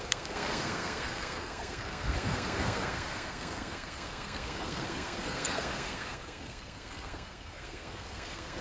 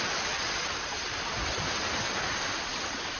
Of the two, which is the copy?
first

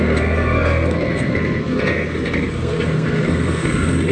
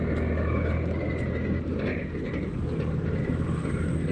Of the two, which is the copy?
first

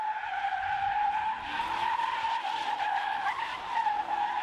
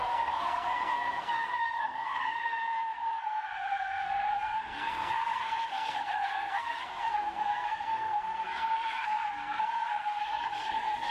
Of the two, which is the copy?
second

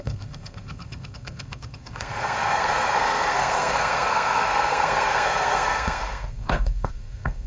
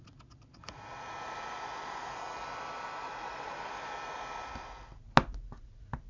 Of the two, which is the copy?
first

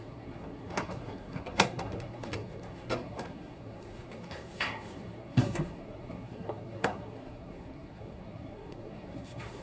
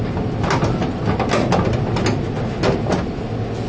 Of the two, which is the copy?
first